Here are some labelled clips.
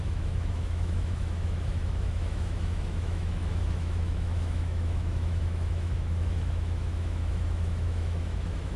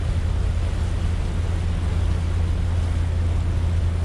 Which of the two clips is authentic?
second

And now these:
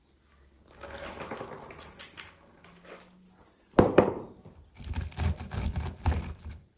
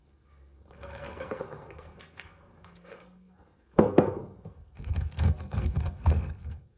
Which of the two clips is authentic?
first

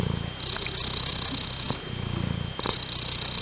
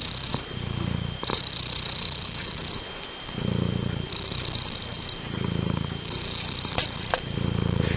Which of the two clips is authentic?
first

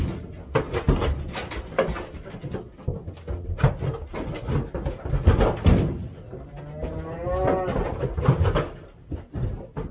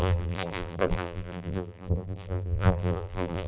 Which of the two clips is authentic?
first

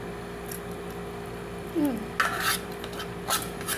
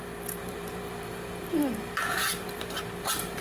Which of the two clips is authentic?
first